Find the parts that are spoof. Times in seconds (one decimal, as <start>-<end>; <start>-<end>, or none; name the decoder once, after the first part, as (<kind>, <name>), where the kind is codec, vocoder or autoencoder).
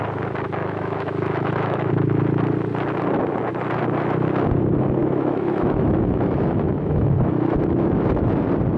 0.6-1.9 (autoencoder, DAC-VAE); 5.0-7.9